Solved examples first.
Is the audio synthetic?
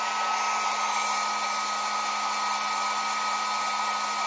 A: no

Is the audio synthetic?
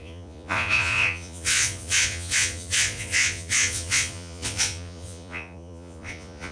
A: yes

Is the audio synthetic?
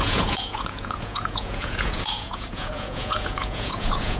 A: yes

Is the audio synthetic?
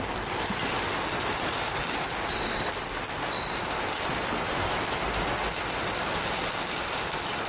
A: no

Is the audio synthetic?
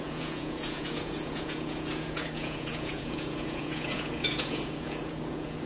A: yes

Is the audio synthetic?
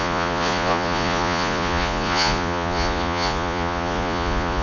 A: yes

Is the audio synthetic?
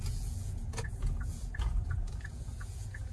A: yes